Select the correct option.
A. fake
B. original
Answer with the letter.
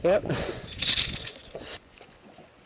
A